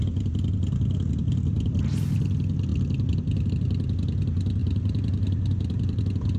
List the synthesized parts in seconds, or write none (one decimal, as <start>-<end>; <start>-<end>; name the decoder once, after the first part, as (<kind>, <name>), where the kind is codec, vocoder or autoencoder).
4.6-6.0 (vocoder, BigVGAN v2)